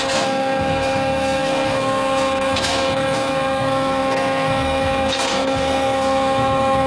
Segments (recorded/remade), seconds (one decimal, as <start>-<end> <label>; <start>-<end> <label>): 0.0-6.9 remade